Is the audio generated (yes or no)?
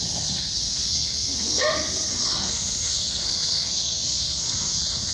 yes